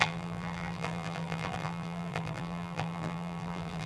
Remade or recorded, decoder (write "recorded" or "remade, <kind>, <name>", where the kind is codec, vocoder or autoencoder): remade, vocoder, BigVGAN v2